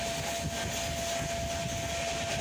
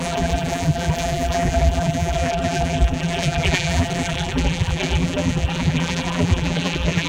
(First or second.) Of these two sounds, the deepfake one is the second